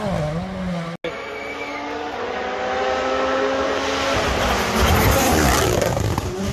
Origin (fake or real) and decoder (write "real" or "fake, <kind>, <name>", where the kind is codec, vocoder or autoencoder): real